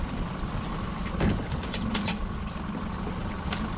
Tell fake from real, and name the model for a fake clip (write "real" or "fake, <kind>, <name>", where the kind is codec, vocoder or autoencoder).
real